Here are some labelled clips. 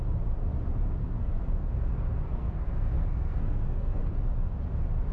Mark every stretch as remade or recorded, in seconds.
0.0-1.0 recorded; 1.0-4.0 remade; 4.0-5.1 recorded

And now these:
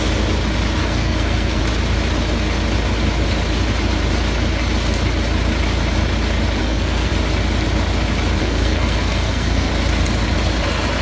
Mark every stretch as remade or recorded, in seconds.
0.0-0.8 recorded; 0.8-1.6 remade; 1.6-6.6 recorded; 6.6-7.1 remade; 7.1-8.4 recorded; 8.4-9.7 remade; 9.7-11.0 recorded

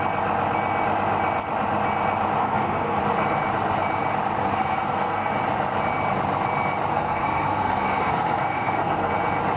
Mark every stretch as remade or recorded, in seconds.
0.0-2.4 recorded; 2.4-3.0 remade; 3.0-4.4 recorded; 4.4-5.3 remade; 5.3-6.9 recorded; 6.9-9.1 remade; 9.1-9.6 recorded

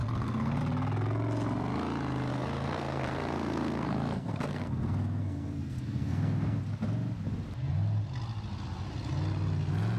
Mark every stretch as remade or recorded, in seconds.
0.0-0.6 remade; 0.6-2.3 recorded; 2.3-6.6 remade; 6.6-10.0 recorded

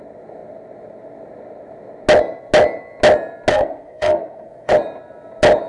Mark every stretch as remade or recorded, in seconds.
0.0-3.5 recorded; 3.5-4.7 remade; 4.7-5.7 recorded

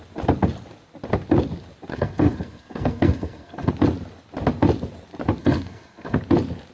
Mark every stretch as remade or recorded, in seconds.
0.0-1.9 recorded; 1.9-3.7 remade; 3.7-5.4 recorded; 5.4-6.2 remade; 6.2-6.7 recorded